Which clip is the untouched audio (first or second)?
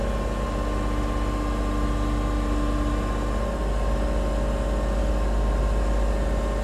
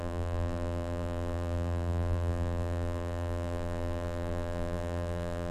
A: first